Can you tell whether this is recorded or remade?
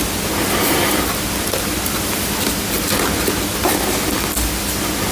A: recorded